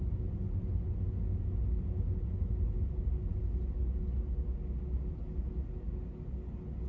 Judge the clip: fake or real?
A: real